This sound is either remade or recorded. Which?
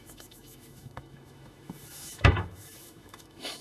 remade